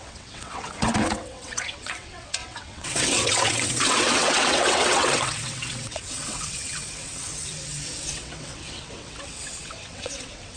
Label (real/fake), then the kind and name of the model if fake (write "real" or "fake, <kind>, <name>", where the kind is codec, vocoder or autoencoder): fake, vocoder, WaveNeXt